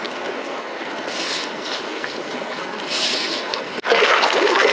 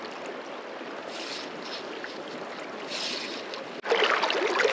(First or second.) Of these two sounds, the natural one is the second